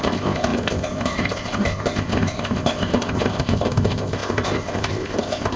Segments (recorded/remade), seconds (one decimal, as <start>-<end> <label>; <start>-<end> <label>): 0.0-5.6 remade

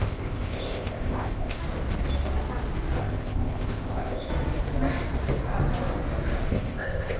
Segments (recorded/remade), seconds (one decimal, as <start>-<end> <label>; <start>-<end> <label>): 0.0-1.6 remade; 1.6-3.0 recorded; 3.0-4.3 remade; 4.3-6.5 recorded; 6.5-7.2 remade